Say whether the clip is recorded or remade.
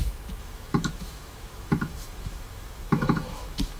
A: remade